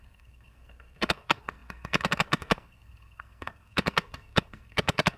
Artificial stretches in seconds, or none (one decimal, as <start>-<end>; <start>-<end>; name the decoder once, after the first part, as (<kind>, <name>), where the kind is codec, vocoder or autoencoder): 0.0-5.2 (codec, SNAC)